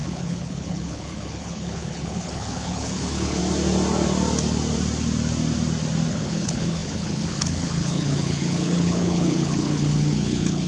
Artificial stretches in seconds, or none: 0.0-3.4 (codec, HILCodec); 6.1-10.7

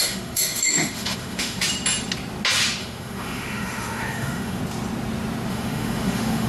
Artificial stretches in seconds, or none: 0.0-1.6 (autoencoder, DAC-VAE); 2.8-4.6; 5.5-6.5

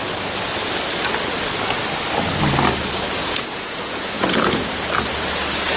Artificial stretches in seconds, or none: 3.2-4.7 (vocoder, Vocos)